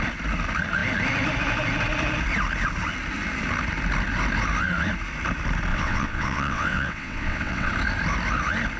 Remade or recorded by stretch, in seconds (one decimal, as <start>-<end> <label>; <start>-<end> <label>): 0.0-5.7 recorded; 5.7-7.7 remade; 7.7-8.8 recorded